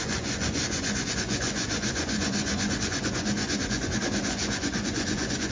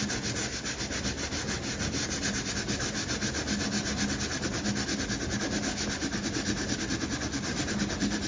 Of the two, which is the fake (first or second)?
first